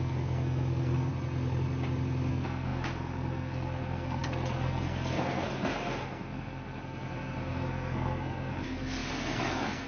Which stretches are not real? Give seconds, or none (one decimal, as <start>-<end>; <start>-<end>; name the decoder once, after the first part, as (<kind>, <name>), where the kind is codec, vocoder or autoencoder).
0.0-1.1 (codec, SNAC); 2.3-9.9

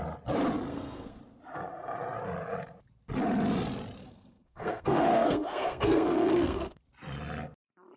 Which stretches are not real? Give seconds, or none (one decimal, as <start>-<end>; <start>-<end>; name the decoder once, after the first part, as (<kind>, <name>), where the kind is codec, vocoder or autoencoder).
0.7-1.2 (codec, SNAC); 4.0-6.8